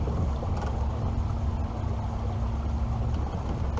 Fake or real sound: real